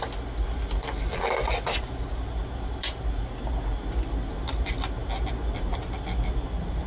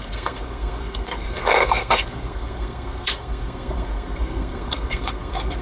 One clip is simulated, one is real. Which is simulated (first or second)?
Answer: second